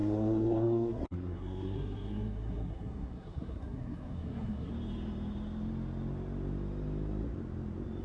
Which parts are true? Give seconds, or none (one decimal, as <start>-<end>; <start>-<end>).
4.7-8.0